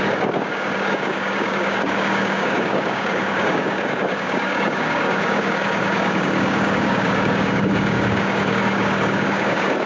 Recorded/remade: remade